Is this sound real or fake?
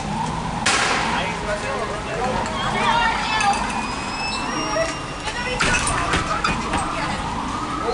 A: real